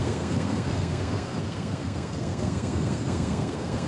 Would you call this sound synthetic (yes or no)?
yes